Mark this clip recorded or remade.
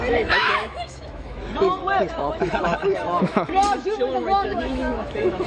remade